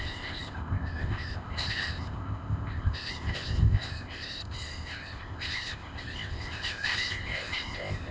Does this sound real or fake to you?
fake